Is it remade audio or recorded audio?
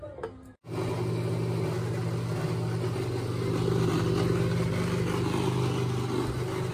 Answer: recorded